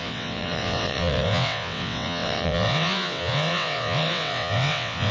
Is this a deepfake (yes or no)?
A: yes